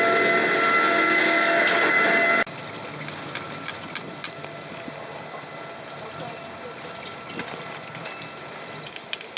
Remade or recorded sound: recorded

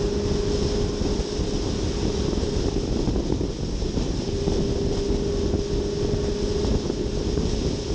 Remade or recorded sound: recorded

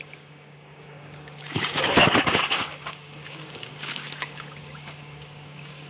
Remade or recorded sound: remade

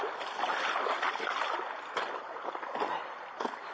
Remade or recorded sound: remade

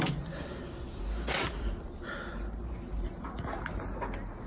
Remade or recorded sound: recorded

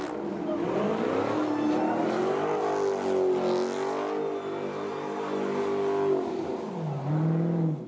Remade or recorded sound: recorded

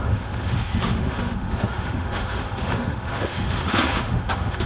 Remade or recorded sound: remade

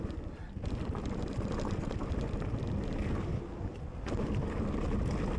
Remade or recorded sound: recorded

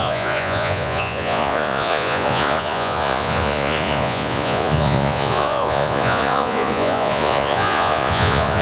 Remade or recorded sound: remade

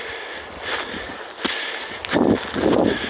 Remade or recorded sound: recorded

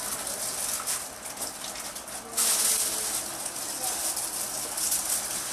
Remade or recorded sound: recorded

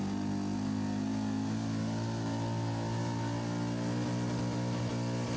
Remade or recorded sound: recorded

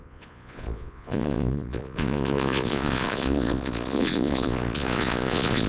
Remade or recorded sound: remade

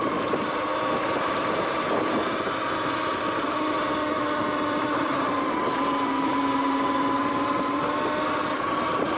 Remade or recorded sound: recorded